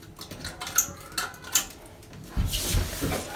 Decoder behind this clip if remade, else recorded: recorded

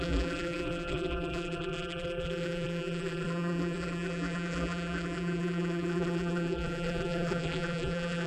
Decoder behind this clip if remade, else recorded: remade, vocoder, BigVGAN v2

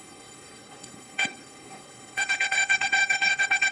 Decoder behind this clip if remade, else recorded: remade, codec, HILCodec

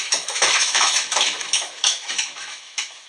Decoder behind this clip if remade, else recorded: remade, autoencoder, DAC-VAE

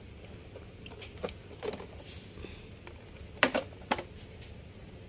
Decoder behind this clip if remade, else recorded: recorded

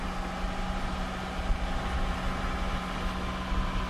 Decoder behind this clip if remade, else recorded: recorded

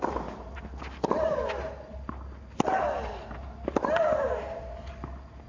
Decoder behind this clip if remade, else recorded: recorded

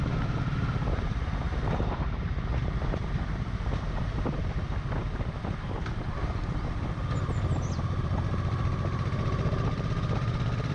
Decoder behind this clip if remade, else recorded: remade, vocoder, BigVGAN v2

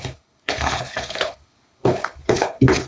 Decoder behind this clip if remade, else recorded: remade, codec, HILCodec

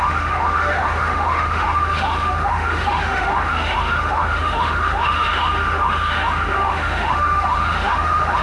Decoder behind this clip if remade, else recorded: remade, autoencoder, DAC-VAE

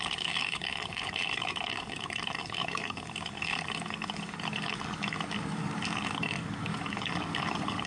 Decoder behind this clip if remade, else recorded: remade, codec, DAC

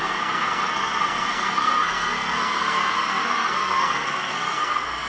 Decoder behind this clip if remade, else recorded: remade, codec, SNAC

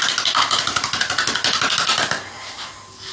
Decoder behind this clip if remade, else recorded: recorded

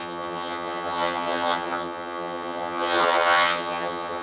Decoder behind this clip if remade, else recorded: remade, vocoder, HiFi-GAN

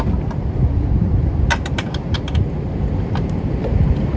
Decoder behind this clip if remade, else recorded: recorded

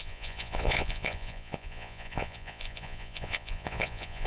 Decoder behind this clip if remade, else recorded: remade, vocoder, Vocos